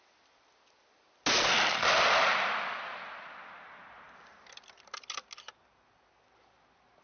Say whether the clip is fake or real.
real